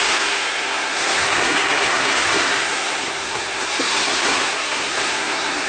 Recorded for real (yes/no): no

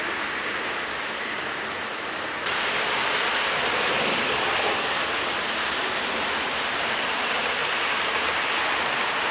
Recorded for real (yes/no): yes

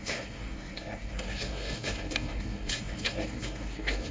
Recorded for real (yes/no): no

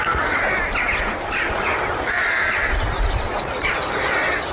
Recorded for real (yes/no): yes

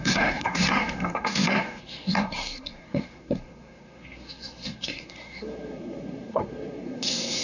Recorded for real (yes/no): no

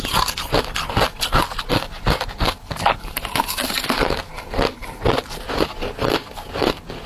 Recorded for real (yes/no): yes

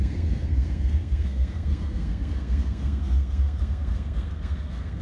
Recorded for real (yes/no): no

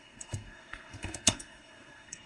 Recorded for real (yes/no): no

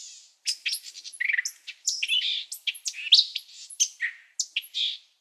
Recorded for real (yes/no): yes